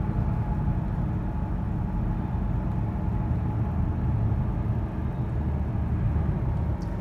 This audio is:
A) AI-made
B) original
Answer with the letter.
B